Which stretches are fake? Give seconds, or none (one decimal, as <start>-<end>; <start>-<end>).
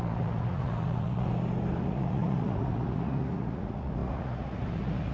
0.0-1.3; 1.8-5.1